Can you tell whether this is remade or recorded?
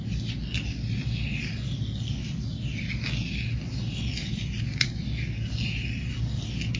recorded